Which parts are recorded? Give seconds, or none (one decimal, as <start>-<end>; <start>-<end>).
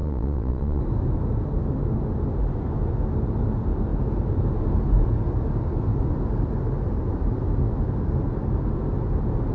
0.8-9.5